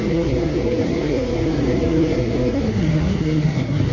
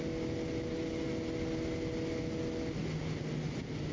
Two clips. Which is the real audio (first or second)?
second